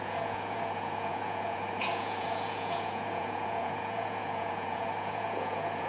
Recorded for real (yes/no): no